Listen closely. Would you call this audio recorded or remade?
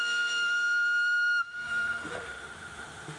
remade